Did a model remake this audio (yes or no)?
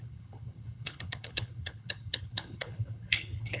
yes